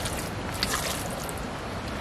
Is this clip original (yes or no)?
yes